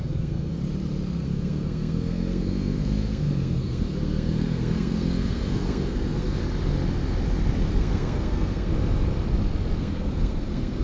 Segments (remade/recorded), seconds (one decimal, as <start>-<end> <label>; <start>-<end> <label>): 0.0-0.6 remade; 0.6-1.2 recorded; 1.2-6.4 remade; 6.4-7.7 recorded; 7.7-8.7 remade; 8.7-9.8 recorded; 9.8-10.8 remade